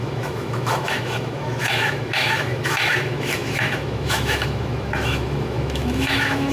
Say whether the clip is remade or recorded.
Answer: remade